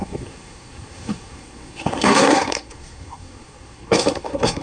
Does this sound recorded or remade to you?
remade